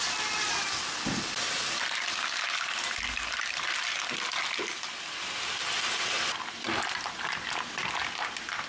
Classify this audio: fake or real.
real